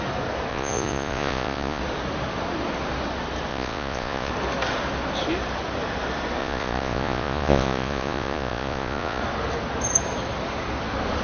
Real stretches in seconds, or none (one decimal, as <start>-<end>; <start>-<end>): 0.0-0.5; 1.8-3.5; 4.3-6.4; 9.2-11.2